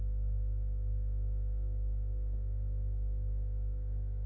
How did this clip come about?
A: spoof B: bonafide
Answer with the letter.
A